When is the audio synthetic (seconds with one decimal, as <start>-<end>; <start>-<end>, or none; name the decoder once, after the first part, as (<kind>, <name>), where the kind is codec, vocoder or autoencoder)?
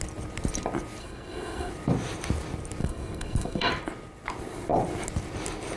1.0-1.7 (codec, SNAC); 2.8-3.7